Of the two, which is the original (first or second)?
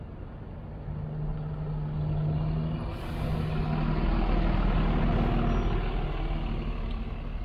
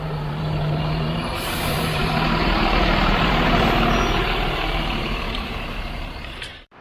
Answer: first